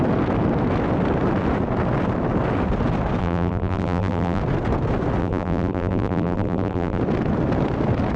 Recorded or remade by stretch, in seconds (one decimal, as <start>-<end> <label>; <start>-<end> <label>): 0.0-3.2 recorded; 3.2-4.4 remade; 4.4-5.2 recorded; 5.2-7.0 remade; 7.0-8.2 recorded